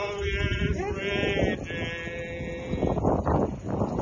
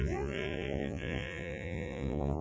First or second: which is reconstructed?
second